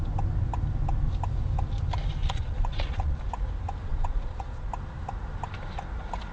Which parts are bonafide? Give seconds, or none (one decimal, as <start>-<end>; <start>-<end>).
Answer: 0.0-2.2; 3.2-3.9; 4.7-6.3